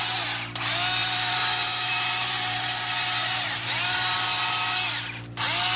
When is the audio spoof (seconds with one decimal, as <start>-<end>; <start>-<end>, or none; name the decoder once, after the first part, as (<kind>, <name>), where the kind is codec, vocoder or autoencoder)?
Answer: 1.0-4.5 (vocoder, BigVGAN v2)